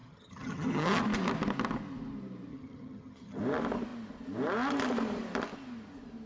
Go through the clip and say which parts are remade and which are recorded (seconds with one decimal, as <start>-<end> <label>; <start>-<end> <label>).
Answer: 0.0-1.0 remade; 1.0-2.5 recorded; 2.5-3.4 remade; 3.4-6.3 recorded